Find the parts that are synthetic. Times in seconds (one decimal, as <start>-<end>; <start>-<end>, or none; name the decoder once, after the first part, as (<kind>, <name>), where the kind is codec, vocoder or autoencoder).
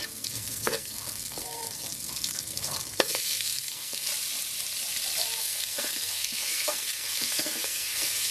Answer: 0.0-4.1 (codec, SNAC); 5.4-8.3